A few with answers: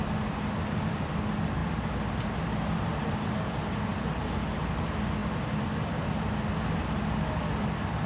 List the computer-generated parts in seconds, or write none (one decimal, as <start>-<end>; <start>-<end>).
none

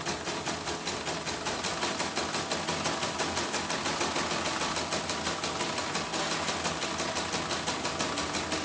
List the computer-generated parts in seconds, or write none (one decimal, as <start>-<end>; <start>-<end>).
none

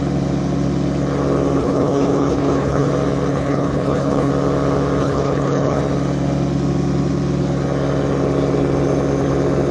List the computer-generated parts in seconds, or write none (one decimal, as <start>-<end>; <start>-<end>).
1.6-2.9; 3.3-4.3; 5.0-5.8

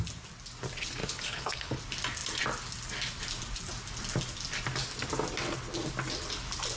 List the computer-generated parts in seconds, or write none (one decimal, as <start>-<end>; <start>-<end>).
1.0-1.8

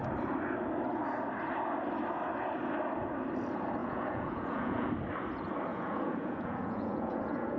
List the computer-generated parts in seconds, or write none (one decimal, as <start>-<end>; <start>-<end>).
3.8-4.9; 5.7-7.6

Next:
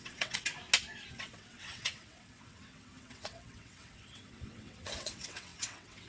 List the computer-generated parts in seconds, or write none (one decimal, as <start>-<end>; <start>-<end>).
0.0-0.5; 1.1-6.1